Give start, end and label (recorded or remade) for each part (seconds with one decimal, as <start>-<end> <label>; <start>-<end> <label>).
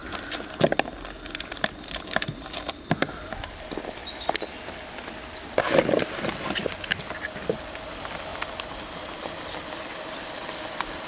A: 0.0-11.1 recorded